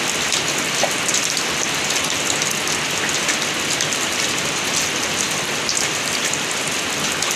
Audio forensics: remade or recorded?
recorded